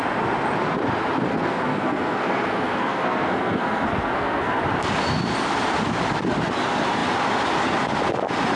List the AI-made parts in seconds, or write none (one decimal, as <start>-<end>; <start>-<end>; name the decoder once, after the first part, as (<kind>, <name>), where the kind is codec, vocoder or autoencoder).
1.3-4.6 (codec, SNAC)